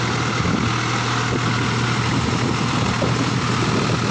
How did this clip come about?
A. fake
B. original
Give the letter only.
B